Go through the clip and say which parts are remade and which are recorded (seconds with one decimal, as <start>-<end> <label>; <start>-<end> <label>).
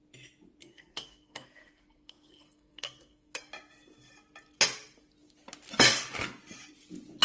0.0-0.6 recorded; 0.6-3.4 remade; 3.4-7.2 recorded